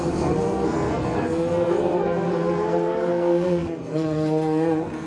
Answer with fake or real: fake